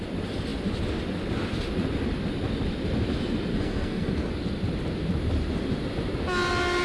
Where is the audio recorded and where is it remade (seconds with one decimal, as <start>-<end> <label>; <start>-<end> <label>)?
0.0-3.5 recorded; 3.5-4.3 remade; 4.3-6.8 recorded

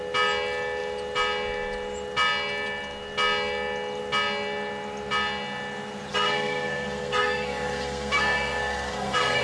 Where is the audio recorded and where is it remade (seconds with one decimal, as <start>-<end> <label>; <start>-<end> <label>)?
0.0-6.1 recorded; 6.1-9.4 remade

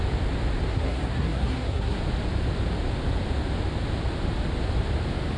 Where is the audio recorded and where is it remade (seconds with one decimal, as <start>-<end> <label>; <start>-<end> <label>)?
0.0-0.7 recorded; 0.7-2.0 remade; 2.0-5.4 recorded